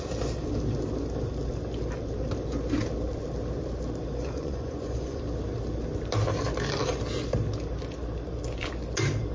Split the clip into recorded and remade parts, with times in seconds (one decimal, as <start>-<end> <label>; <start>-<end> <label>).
0.0-4.1 recorded; 4.1-5.2 remade; 5.2-9.3 recorded

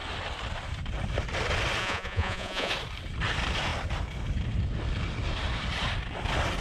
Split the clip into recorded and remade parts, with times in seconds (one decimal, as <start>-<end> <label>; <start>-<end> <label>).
0.0-1.8 recorded; 1.8-2.7 remade; 2.7-6.6 recorded